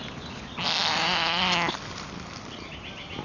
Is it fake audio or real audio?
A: real